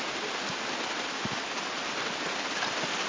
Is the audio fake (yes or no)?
no